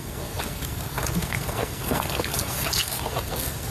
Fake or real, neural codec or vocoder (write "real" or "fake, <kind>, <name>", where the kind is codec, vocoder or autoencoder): fake, codec, SNAC